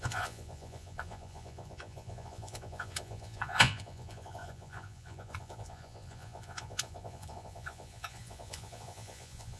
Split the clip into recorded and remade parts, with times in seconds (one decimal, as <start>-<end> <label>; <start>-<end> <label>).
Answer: 0.0-9.6 remade